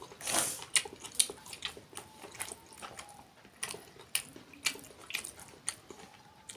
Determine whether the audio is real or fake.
real